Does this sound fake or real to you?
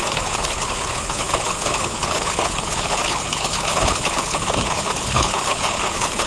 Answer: fake